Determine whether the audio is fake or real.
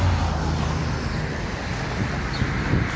real